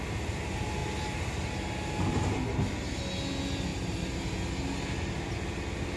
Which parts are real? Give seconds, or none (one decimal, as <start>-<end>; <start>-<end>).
0.0-3.7; 4.2-6.0